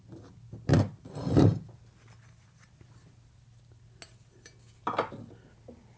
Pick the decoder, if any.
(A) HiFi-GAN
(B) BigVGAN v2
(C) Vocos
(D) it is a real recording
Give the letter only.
D